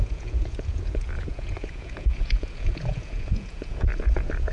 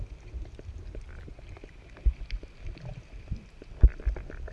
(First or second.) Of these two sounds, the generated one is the first